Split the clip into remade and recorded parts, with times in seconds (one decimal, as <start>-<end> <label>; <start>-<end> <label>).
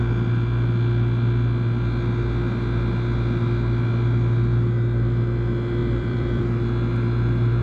0.0-5.8 recorded; 5.8-6.4 remade; 6.4-7.6 recorded